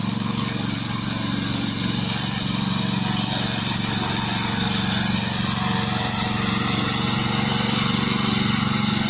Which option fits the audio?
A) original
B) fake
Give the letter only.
A